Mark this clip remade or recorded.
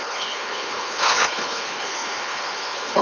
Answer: remade